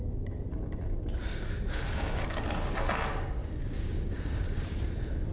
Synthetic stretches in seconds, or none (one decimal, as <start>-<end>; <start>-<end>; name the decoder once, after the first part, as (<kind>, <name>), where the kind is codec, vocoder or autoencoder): 1.3-2.4 (codec, DAC); 3.4-4.8

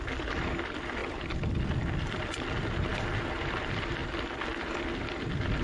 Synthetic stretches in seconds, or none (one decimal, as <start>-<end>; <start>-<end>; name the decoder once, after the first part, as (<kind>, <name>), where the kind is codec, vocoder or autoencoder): 1.0-2.5 (vocoder, BigVGAN v2); 2.9-3.5; 4.0-4.8

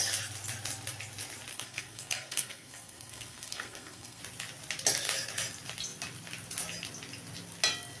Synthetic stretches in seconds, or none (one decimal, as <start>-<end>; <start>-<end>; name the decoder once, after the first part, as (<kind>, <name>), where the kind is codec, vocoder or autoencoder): 1.5-4.2 (codec, SNAC)

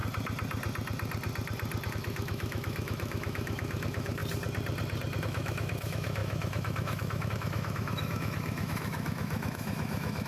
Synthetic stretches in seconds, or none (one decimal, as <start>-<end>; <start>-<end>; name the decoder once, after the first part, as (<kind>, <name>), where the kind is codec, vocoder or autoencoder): 1.9-4.2 (autoencoder, DAC-VAE); 5.2-10.3